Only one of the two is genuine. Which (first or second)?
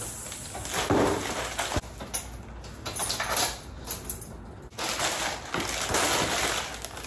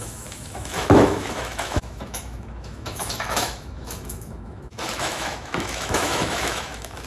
first